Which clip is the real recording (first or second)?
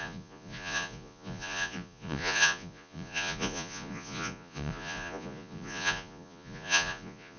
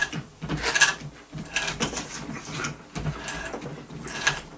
second